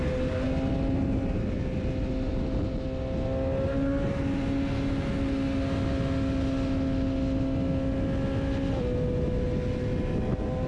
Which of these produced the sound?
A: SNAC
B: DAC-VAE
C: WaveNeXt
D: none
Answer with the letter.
D